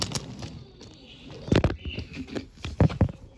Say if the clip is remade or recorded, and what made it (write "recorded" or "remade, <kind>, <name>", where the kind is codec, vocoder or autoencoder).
recorded